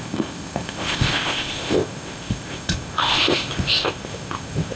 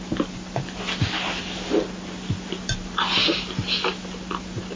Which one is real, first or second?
second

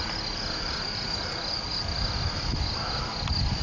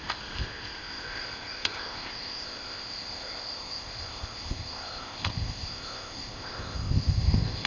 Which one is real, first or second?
first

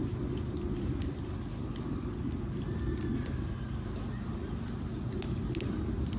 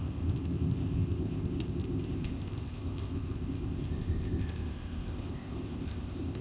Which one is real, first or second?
first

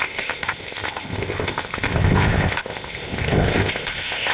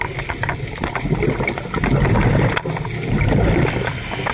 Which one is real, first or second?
second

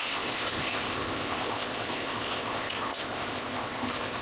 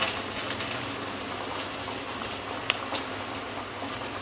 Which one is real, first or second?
second